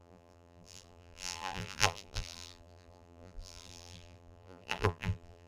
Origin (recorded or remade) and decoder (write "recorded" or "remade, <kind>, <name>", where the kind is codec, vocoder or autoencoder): remade, vocoder, BigVGAN v2